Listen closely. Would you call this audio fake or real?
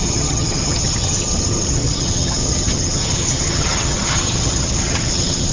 fake